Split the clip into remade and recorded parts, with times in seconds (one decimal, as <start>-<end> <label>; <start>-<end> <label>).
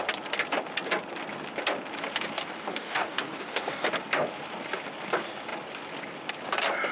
0.0-2.7 recorded; 2.7-3.9 remade; 3.9-6.9 recorded